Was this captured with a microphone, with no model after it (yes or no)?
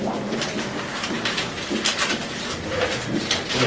no